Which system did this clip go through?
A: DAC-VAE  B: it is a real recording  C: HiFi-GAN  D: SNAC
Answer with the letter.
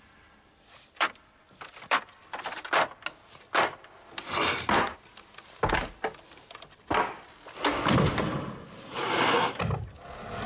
B